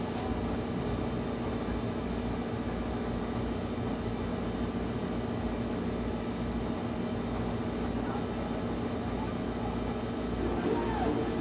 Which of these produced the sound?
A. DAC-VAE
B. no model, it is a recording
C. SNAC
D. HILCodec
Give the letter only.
B